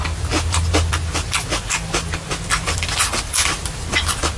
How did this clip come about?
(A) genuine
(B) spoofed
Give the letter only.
A